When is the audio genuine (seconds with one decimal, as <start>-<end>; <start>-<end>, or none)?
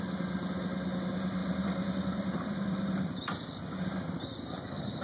0.0-1.4; 4.4-5.0